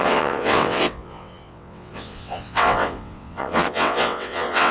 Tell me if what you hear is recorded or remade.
remade